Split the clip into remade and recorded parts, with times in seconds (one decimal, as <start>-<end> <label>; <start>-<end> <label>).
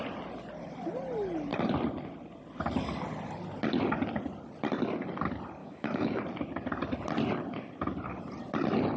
0.0-5.6 recorded; 5.6-6.2 remade; 6.2-9.0 recorded